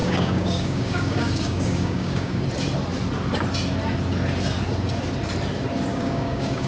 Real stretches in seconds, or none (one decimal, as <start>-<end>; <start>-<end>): 2.4-5.9